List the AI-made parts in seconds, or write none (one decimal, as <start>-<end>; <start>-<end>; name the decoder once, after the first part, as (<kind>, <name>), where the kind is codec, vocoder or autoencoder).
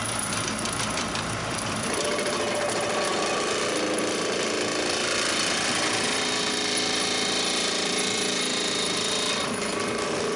0.0-10.4 (vocoder, BigVGAN v2)